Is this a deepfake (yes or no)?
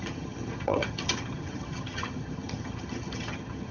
yes